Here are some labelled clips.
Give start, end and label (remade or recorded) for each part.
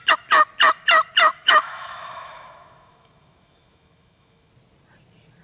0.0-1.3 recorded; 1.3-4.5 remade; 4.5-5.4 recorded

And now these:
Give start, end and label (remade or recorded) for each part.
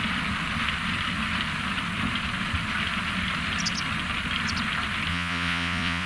0.0-5.1 recorded; 5.1-6.1 remade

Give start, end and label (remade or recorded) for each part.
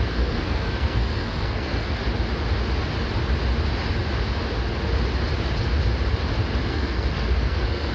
0.0-2.0 remade; 2.0-6.7 recorded; 6.7-7.9 remade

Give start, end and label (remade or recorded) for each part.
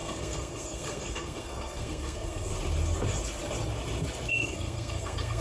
0.0-2.5 remade; 2.5-4.3 recorded; 4.3-5.4 remade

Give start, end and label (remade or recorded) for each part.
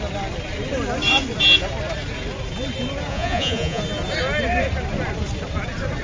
0.0-3.1 recorded; 3.1-3.8 remade; 3.8-6.0 recorded